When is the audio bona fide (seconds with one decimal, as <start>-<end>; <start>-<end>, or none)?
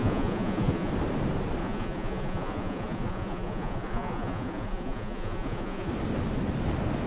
0.9-1.6; 5.9-7.1